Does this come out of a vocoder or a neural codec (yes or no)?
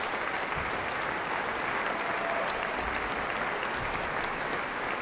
no